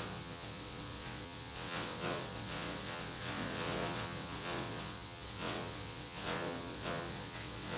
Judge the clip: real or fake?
fake